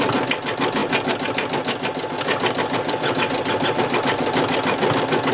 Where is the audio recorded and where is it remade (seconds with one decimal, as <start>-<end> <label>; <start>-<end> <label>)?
0.0-5.3 recorded